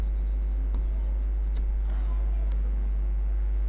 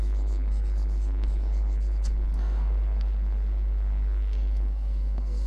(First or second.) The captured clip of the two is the first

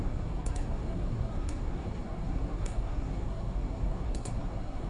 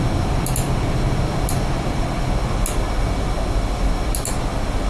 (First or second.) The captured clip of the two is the second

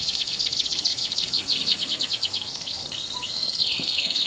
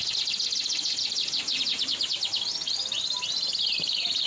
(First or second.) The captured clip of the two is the second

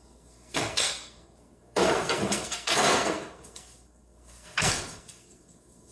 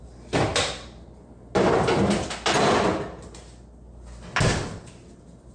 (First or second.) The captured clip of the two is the second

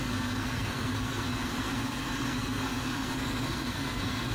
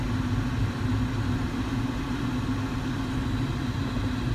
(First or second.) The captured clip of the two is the second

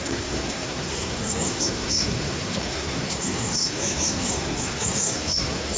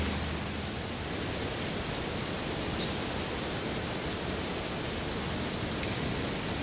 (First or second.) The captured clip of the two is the second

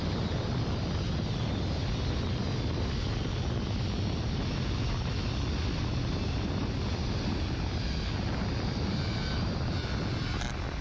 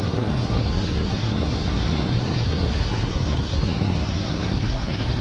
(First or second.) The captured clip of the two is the first